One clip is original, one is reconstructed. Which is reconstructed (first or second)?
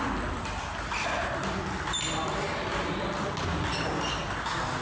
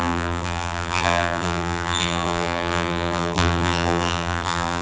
second